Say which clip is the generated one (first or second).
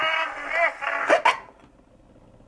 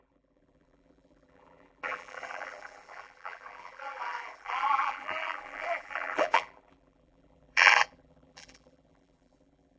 second